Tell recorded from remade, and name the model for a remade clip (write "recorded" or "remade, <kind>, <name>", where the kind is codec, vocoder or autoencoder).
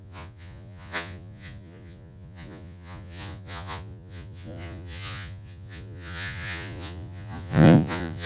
remade, vocoder, Vocos